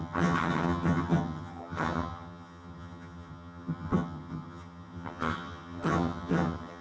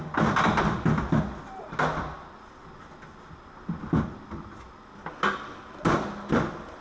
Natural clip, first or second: second